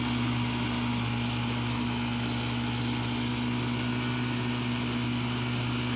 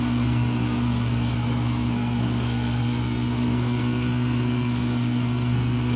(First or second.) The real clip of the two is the first